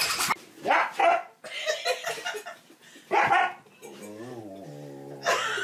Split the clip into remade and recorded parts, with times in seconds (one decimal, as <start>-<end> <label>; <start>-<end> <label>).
0.0-5.6 recorded